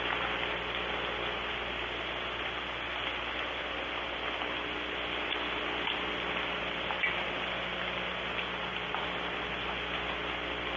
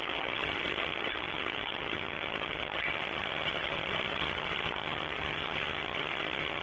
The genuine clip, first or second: first